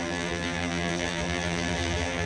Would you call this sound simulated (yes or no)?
yes